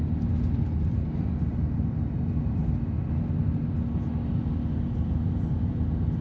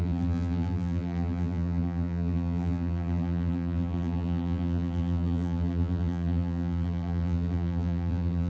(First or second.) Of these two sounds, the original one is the first